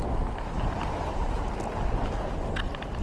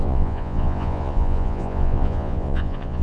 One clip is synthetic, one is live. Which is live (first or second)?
first